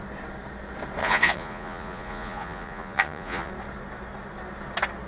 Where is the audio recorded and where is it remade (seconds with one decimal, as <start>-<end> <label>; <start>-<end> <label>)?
0.0-1.0 recorded; 1.0-3.5 remade; 3.5-5.1 recorded